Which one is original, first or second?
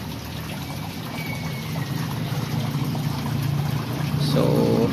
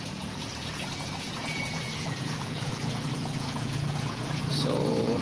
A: first